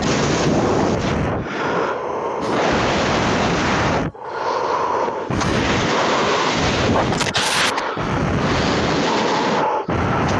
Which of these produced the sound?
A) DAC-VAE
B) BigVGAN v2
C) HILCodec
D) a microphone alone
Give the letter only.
D